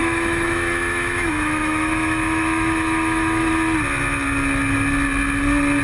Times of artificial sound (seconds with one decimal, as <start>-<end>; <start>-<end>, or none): 0.0-3.5